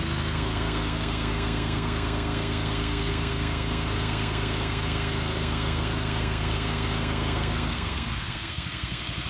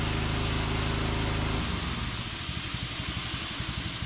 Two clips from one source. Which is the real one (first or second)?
second